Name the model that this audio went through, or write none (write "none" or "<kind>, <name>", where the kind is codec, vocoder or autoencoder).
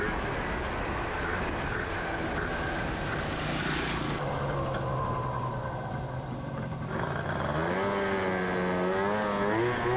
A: none